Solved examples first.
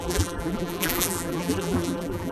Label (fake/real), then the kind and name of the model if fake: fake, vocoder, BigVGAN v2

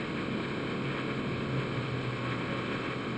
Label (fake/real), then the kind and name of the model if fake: real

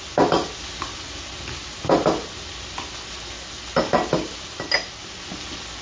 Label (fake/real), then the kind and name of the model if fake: real